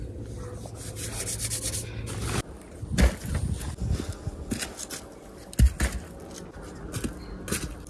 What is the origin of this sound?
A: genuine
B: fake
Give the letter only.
A